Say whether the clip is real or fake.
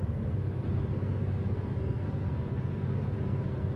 fake